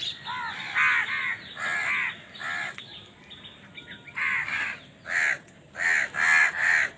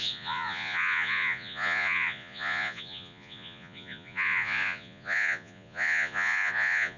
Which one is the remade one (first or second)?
second